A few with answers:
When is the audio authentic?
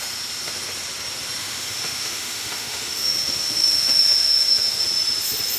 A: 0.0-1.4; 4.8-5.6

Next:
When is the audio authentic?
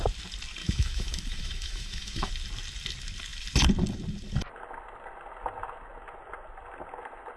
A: 0.0-0.6; 2.3-7.4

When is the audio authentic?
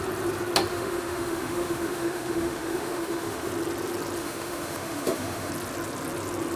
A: 0.0-0.7; 3.5-4.2; 5.5-6.6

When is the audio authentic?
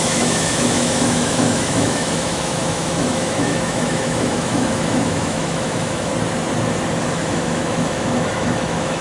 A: 6.1-7.0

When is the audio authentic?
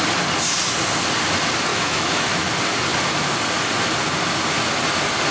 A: 0.0-1.7; 2.5-5.3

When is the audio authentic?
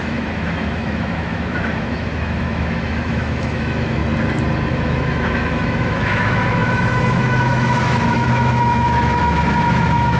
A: 4.0-4.7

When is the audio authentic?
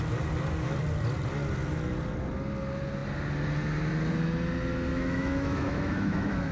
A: 0.0-4.9